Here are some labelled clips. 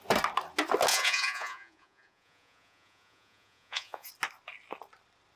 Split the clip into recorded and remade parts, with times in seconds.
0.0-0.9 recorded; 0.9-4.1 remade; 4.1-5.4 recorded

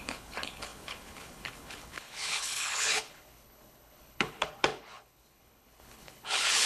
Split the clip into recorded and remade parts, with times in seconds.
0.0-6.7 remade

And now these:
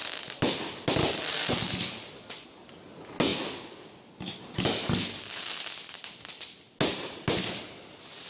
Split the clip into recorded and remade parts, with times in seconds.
0.0-8.3 recorded

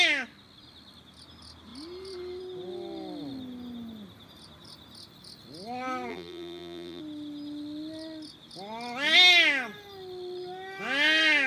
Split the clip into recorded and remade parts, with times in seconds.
0.0-6.1 recorded; 6.1-7.0 remade; 7.0-11.5 recorded

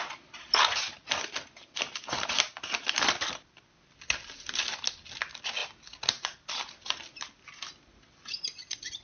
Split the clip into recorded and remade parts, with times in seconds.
0.0-9.0 recorded

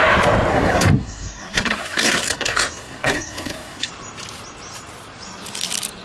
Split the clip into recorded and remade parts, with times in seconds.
0.0-0.5 recorded; 0.5-3.9 remade; 3.9-6.0 recorded

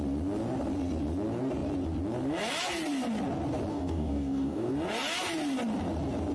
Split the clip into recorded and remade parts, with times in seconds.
0.0-3.7 recorded; 3.7-4.7 remade; 4.7-6.3 recorded

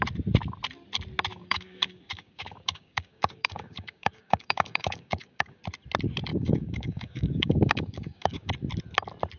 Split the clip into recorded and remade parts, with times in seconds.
0.0-1.3 recorded; 1.3-5.6 remade; 5.6-6.3 recorded; 6.3-8.5 remade; 8.5-9.4 recorded